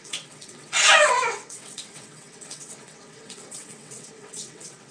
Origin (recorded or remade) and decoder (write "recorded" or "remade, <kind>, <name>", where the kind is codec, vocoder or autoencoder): remade, vocoder, WaveNeXt